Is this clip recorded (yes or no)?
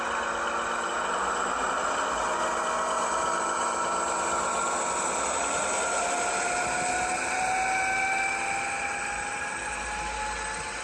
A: yes